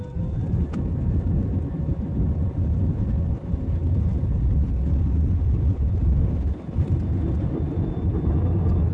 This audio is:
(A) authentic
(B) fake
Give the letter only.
A